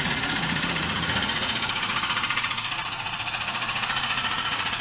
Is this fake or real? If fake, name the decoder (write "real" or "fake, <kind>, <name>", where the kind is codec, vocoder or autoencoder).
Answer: fake, vocoder, Vocos